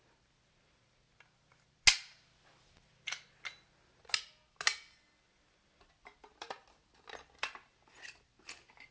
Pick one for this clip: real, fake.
real